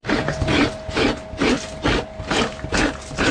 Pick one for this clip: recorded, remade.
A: recorded